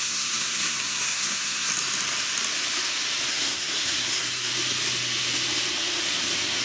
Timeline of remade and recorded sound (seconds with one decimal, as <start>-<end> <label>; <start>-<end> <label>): 0.0-1.7 remade; 1.7-3.3 recorded; 3.3-4.5 remade; 4.5-6.6 recorded